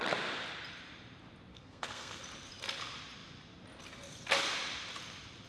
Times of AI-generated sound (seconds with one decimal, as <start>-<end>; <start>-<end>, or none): 1.5-2.2